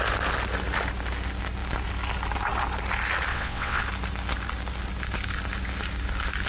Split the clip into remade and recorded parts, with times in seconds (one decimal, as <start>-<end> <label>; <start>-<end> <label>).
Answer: 0.0-3.3 recorded; 3.3-3.8 remade; 3.8-6.5 recorded